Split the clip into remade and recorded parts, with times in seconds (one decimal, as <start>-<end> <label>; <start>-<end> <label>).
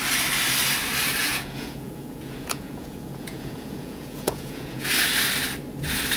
0.0-1.2 recorded; 1.2-4.9 remade; 4.9-6.2 recorded